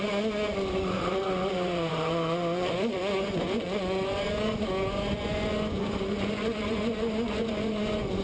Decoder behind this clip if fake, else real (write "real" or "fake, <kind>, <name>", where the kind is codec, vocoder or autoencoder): fake, vocoder, Vocos